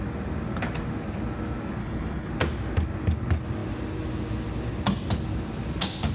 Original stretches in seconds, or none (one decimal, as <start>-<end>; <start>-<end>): 0.0-1.8; 2.3-6.1